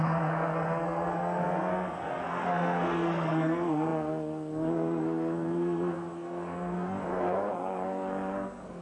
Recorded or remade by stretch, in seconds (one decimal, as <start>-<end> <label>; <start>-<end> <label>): 0.0-8.8 remade

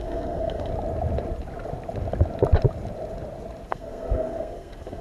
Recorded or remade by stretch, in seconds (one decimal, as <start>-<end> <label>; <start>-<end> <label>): 0.0-0.7 remade; 0.7-3.7 recorded; 3.7-5.0 remade

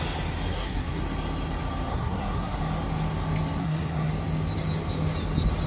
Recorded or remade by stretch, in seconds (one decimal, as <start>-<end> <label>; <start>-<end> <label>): 0.0-0.5 recorded; 0.5-1.0 remade; 1.0-1.9 recorded; 1.9-2.6 remade; 2.6-3.6 recorded; 3.6-4.1 remade; 4.1-5.7 recorded

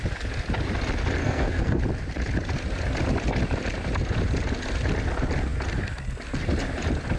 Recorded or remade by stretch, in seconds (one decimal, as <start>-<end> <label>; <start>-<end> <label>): 0.0-1.2 recorded; 1.2-1.8 remade; 1.8-7.2 recorded

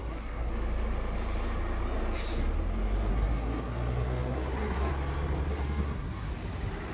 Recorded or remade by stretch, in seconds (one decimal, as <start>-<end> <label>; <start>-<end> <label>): 0.0-0.5 remade; 0.5-3.1 recorded; 3.1-4.9 remade; 4.9-5.5 recorded; 5.5-6.3 remade; 6.3-6.9 recorded

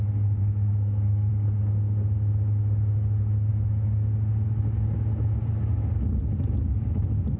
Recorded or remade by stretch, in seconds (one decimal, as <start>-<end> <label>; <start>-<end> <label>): 0.0-0.4 recorded; 0.4-1.3 remade; 1.3-7.4 recorded

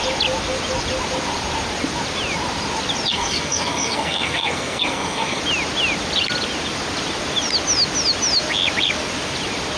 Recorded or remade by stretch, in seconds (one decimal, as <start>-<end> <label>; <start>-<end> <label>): 0.0-3.1 recorded; 3.1-5.4 remade; 5.4-9.8 recorded

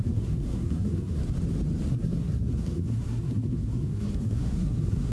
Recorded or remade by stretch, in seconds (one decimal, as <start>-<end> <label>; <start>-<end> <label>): 0.0-1.2 remade; 1.2-1.9 recorded; 1.9-5.1 remade